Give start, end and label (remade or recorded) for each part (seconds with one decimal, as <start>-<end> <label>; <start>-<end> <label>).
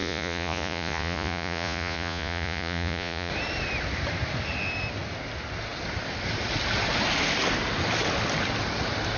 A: 0.0-3.3 remade; 3.3-9.2 recorded